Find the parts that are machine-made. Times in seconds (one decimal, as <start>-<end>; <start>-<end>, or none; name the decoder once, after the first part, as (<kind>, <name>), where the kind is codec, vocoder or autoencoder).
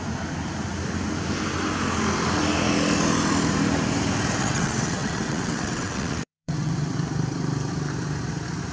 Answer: 4.4-6.7 (vocoder, WaveNeXt)